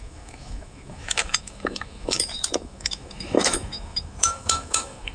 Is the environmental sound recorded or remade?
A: remade